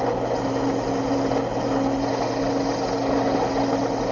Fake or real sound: real